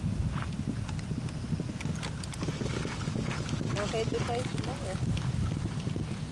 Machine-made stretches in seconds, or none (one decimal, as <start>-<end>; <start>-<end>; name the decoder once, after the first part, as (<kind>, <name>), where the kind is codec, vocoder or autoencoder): none